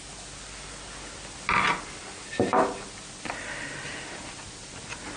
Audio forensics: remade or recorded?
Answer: recorded